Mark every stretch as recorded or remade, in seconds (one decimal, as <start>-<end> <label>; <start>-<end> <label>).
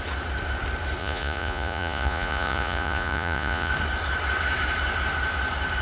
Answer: 0.0-1.0 recorded; 1.0-3.7 remade; 3.7-5.8 recorded